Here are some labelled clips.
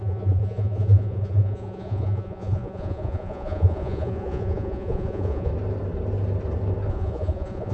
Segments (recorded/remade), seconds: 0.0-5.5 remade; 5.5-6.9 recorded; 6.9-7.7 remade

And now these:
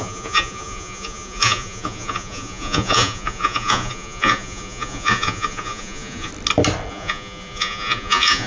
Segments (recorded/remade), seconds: 0.0-6.3 remade; 6.3-6.9 recorded; 6.9-8.5 remade

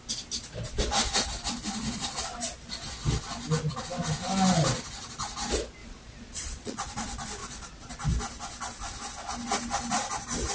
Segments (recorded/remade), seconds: 0.0-5.8 recorded; 5.8-6.8 remade; 6.8-7.4 recorded; 7.4-7.9 remade; 7.9-10.5 recorded

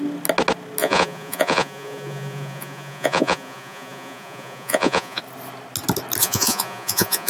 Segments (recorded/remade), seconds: 0.0-0.8 recorded; 0.8-5.2 remade; 5.2-6.2 recorded; 6.2-7.3 remade